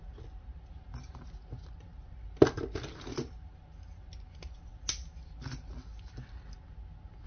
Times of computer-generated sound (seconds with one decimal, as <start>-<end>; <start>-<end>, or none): none